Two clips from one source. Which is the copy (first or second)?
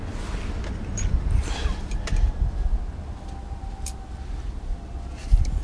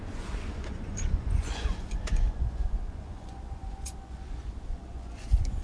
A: second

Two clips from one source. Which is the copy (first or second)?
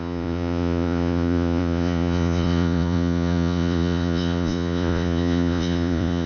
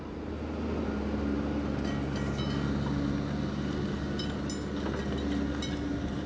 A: first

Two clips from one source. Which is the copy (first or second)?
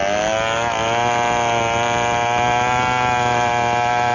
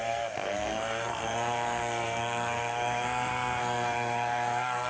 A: second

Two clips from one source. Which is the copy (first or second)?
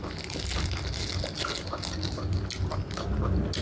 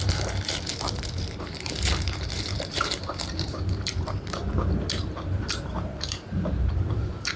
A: second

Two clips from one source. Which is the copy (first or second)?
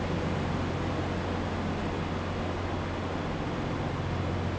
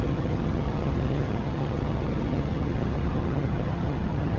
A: second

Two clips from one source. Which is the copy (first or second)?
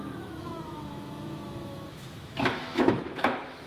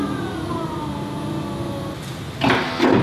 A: first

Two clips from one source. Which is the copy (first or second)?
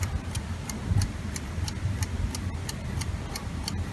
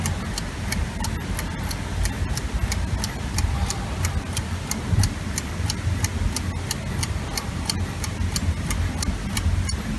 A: first